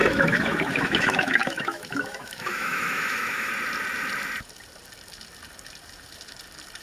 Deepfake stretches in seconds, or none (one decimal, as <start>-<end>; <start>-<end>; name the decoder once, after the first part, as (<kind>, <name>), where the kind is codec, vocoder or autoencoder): 0.0-3.5 (autoencoder, DAC-VAE)